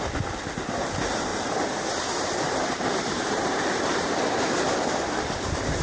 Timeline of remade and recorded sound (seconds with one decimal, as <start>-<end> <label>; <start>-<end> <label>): 0.0-1.3 recorded; 1.3-4.8 remade; 4.8-5.8 recorded